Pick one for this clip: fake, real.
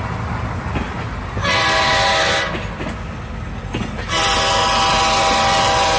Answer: real